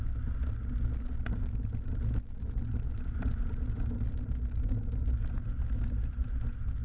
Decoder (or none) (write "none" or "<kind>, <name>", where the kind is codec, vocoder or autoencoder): none